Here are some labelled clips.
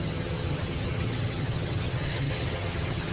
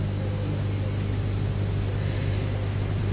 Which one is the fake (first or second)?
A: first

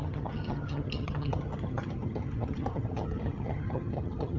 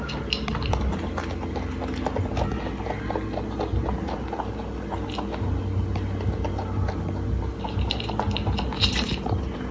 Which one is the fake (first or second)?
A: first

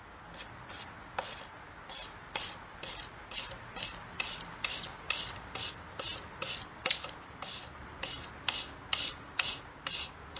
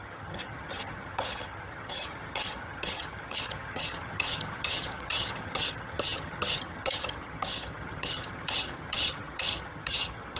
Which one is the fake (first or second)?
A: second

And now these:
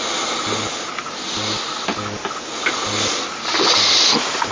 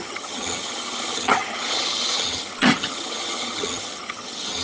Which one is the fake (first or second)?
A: second